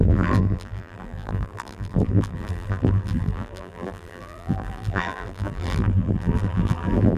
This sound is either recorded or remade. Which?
remade